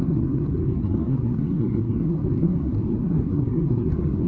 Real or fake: fake